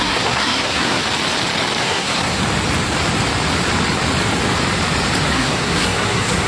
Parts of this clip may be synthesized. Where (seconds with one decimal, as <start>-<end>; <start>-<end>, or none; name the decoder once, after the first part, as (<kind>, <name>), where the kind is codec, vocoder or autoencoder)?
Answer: 0.0-1.0 (codec, SNAC); 1.8-2.4; 5.3-6.5